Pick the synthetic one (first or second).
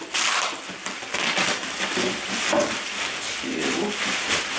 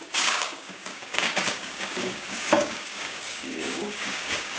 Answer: second